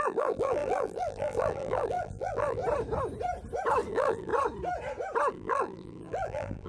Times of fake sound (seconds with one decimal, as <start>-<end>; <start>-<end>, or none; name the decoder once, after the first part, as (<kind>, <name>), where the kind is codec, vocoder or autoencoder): 0.0-2.6 (vocoder, BigVGAN v2); 3.9-4.3; 5.3-6.7